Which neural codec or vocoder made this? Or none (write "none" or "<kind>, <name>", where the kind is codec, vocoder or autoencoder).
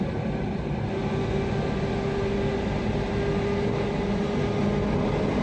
none